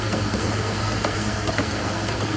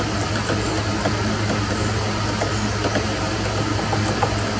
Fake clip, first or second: first